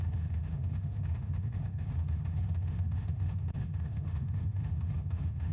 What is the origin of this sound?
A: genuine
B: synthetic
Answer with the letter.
B